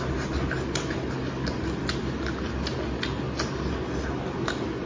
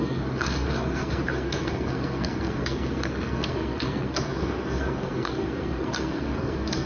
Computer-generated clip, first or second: second